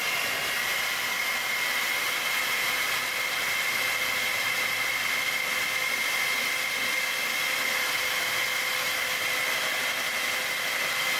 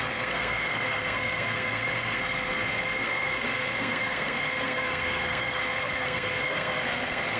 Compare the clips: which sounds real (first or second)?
first